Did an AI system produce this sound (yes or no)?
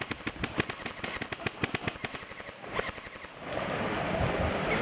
no